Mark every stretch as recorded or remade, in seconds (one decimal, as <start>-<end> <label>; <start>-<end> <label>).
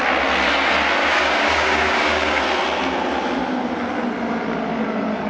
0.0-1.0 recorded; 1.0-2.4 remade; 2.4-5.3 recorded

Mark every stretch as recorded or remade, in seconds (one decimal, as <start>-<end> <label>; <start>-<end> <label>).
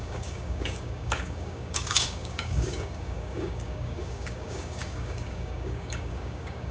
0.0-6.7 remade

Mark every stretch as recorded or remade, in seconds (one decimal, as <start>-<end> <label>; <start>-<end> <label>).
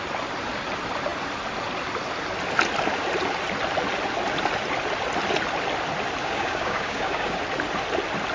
0.0-6.2 recorded; 6.2-7.4 remade; 7.4-8.3 recorded